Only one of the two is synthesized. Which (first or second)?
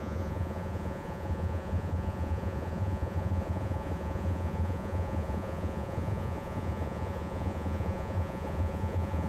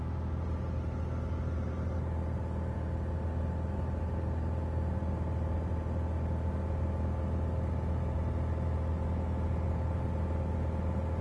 first